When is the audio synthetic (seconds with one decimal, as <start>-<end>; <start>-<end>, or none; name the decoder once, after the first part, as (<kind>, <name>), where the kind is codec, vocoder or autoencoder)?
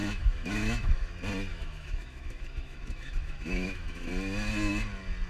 0.0-1.1 (autoencoder, DAC-VAE); 1.5-4.1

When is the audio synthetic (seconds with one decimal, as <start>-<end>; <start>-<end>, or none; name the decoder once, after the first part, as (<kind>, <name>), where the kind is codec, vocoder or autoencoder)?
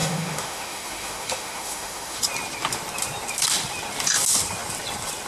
0.0-2.2 (autoencoder, DAC-VAE)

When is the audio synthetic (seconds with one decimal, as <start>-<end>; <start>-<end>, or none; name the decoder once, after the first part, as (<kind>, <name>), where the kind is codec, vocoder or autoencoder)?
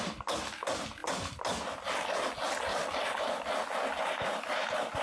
none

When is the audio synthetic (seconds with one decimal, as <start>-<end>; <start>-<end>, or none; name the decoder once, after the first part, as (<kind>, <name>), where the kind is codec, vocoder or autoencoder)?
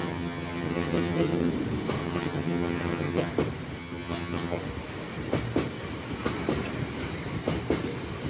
0.0-1.5 (vocoder, HiFi-GAN); 2.0-3.3; 3.8-4.6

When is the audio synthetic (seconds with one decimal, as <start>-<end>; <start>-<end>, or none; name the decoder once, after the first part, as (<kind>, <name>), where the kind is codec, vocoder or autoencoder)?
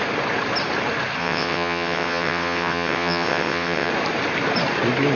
1.2-3.9 (vocoder, WaveNeXt)